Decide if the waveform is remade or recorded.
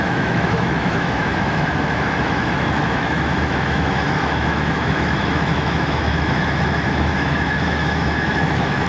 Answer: remade